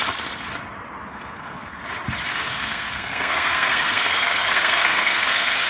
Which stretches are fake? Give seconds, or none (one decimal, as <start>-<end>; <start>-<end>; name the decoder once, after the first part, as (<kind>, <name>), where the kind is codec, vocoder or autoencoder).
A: 1.1-1.8 (codec, SNAC); 2.3-5.7